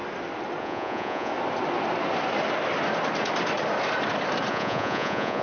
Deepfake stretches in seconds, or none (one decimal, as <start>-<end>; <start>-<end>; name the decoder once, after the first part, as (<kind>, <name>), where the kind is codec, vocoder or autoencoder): 0.6-1.3 (vocoder, Vocos); 4.5-5.4